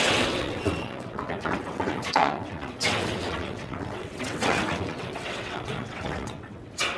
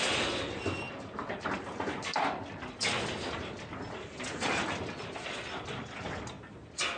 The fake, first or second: first